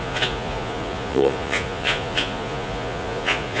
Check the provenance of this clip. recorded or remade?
remade